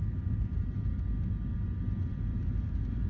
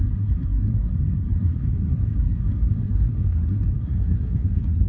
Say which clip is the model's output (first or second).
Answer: second